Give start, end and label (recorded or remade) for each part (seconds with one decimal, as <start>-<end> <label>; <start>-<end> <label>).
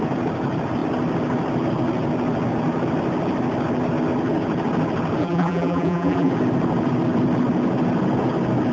0.0-5.2 recorded; 5.2-6.3 remade; 6.3-8.7 recorded